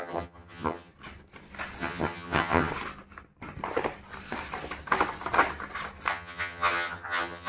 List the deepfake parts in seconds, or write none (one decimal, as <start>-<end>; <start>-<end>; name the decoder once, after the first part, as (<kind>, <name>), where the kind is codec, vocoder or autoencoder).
0.0-0.9 (vocoder, HiFi-GAN); 1.8-2.7; 6.1-7.5